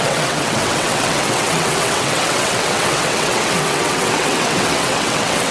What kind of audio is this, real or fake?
fake